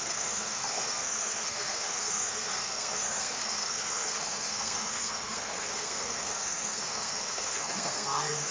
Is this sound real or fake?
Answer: fake